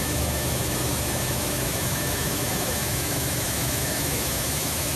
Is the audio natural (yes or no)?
no